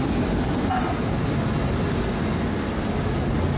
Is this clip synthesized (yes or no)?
no